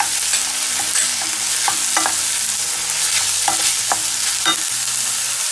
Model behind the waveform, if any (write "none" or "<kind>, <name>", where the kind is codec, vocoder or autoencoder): none